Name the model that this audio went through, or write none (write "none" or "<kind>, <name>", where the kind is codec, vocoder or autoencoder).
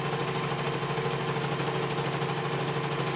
none